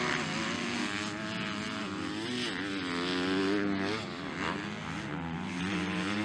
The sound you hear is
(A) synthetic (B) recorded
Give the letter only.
B